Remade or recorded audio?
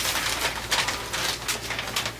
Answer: recorded